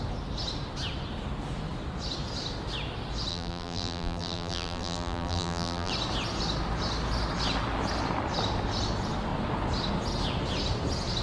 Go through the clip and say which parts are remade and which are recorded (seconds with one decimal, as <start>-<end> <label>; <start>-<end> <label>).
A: 0.0-3.3 recorded; 3.3-5.9 remade; 5.9-11.2 recorded